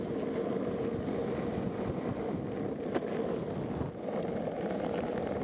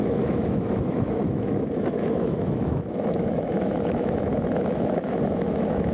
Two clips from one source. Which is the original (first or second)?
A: first